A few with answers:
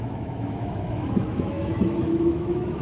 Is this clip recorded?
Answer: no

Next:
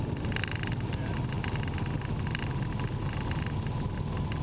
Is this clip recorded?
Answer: yes